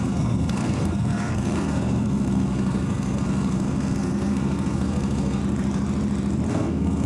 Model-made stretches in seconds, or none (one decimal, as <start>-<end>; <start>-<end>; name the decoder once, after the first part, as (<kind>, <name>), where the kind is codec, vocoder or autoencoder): 0.0-5.4 (codec, SNAC); 6.5-7.1